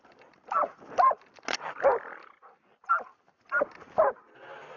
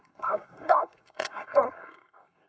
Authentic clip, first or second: first